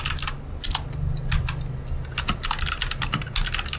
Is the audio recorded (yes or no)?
yes